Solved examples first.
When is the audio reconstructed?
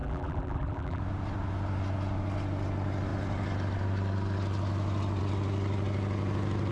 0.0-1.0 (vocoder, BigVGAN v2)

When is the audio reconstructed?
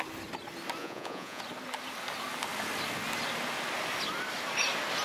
0.8-1.4 (vocoder, Vocos)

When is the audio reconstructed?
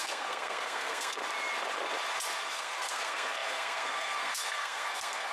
0.0-1.2 (codec, SNAC); 2.5-5.3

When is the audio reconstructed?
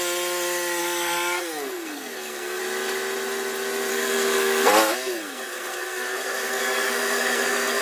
0.8-2.6 (codec, SNAC); 3.9-7.8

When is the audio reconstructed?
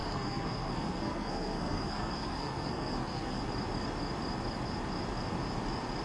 0.0-3.4 (codec, SNAC)